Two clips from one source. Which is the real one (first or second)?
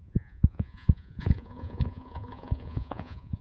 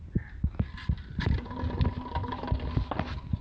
second